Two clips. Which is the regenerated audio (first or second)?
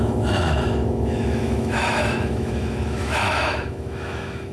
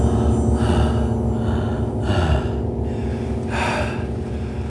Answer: first